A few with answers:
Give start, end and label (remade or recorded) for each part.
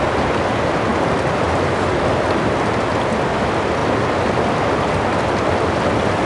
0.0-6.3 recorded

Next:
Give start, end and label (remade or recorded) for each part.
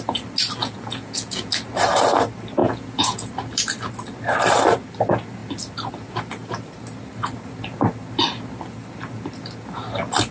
0.0-0.6 recorded; 0.6-1.5 remade; 1.5-2.6 recorded; 2.6-3.3 remade; 3.3-10.3 recorded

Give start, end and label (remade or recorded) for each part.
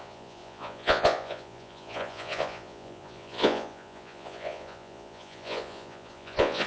0.0-6.7 remade